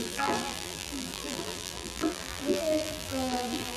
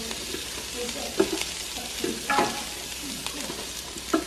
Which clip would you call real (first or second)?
second